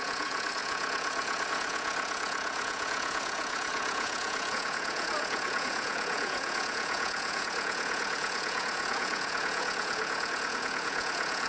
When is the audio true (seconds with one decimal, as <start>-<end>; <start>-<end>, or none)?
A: none